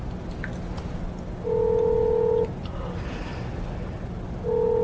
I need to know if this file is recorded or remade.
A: recorded